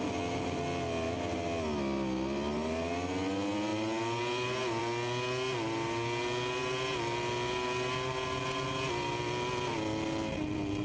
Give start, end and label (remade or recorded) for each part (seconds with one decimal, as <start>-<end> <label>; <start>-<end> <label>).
0.0-3.7 recorded; 3.7-4.8 remade; 4.8-10.8 recorded